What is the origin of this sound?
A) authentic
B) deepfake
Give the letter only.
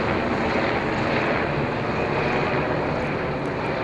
A